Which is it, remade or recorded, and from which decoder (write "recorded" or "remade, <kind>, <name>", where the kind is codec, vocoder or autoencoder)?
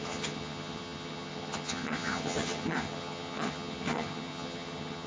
remade, vocoder, HiFi-GAN